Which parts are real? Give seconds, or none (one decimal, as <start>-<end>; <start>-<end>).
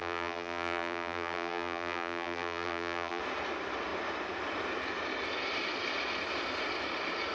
3.2-7.3